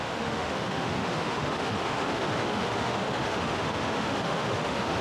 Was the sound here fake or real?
fake